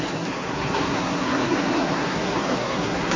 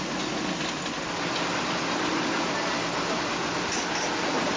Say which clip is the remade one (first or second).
first